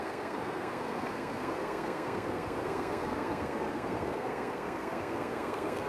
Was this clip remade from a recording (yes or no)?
yes